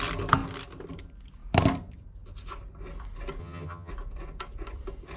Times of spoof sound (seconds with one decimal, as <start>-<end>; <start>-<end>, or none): 3.4-3.9

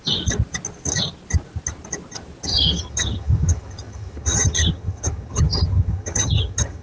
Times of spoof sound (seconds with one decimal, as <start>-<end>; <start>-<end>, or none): 2.5-6.8